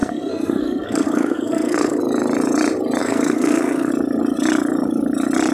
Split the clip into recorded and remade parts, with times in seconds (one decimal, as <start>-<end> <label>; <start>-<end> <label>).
0.0-2.0 remade; 2.0-3.0 recorded; 3.0-3.9 remade; 3.9-5.5 recorded